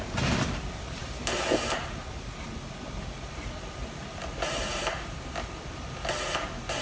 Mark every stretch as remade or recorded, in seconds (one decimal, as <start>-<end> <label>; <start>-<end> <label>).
0.0-6.8 recorded